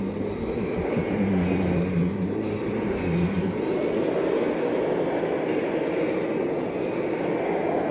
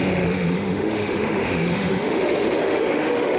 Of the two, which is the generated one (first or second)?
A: second